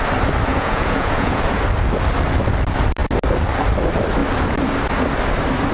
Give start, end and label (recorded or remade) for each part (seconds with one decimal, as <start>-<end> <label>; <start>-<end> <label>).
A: 0.0-0.5 recorded; 0.5-1.4 remade; 1.4-5.7 recorded